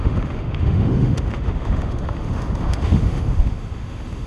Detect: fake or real fake